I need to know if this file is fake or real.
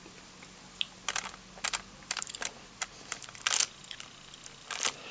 real